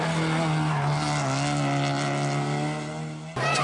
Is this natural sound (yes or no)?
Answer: yes